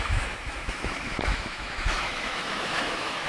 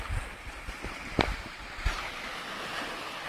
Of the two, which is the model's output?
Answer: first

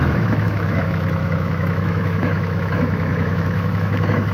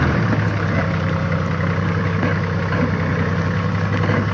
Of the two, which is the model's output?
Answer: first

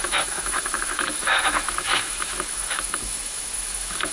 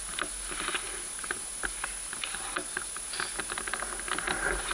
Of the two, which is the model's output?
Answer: first